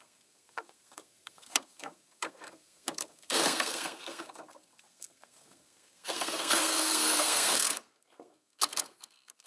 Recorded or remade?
remade